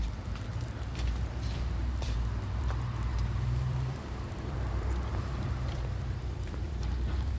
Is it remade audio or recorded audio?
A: remade